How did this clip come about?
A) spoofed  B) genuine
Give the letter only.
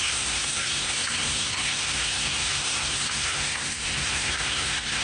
A